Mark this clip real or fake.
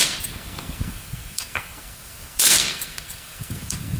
fake